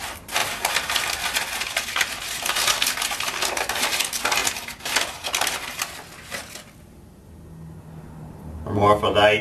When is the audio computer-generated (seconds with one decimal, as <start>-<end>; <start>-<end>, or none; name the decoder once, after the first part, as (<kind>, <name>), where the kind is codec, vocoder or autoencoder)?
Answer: none

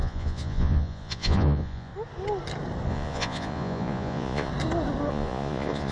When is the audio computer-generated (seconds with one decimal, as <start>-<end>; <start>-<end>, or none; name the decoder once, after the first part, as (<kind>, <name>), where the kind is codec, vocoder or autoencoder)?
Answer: 0.0-1.9 (vocoder, Vocos); 2.9-4.5; 5.1-5.9